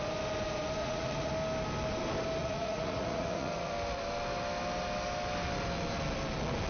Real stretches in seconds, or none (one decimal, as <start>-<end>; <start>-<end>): 0.0-0.8; 1.3-2.4; 3.7-6.7

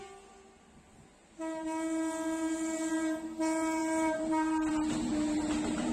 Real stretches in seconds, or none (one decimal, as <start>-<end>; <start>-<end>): 0.0-5.9

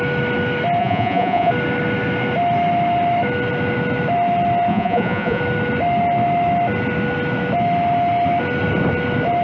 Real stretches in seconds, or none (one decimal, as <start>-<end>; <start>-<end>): 0.0-0.8; 1.5-4.7; 5.4-9.4

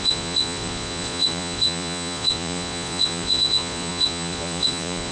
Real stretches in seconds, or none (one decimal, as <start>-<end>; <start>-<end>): none

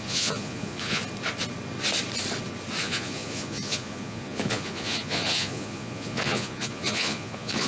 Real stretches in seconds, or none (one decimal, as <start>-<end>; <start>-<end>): 1.0-2.8